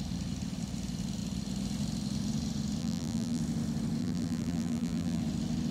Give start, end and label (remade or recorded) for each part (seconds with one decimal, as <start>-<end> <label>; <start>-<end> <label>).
0.0-2.8 recorded; 2.8-3.4 remade; 3.4-4.0 recorded; 4.0-5.2 remade; 5.2-5.7 recorded